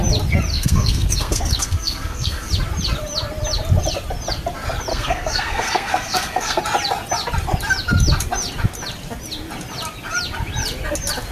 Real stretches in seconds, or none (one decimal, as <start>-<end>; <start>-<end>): 0.0-0.5; 2.5-4.9; 6.6-11.3